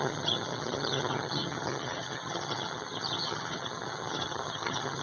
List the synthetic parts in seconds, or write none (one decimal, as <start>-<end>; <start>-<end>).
0.0-5.0